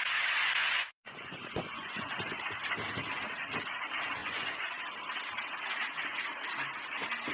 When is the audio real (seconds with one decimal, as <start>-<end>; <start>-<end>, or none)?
0.0-0.6; 2.1-4.2; 4.8-7.3